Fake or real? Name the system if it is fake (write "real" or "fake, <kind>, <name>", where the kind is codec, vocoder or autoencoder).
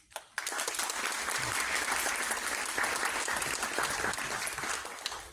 real